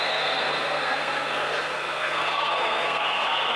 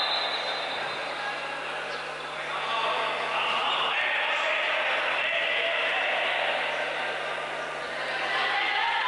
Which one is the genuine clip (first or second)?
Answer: second